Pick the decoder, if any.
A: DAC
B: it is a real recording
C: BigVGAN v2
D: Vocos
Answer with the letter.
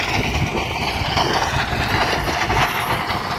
B